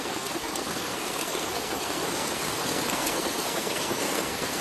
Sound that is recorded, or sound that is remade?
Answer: remade